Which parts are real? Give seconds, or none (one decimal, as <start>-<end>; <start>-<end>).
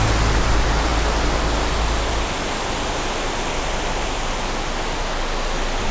0.0-5.9